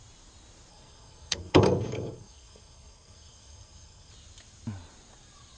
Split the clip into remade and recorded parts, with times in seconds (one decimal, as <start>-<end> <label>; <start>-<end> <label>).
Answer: 0.0-0.7 recorded; 0.7-4.1 remade; 4.1-5.6 recorded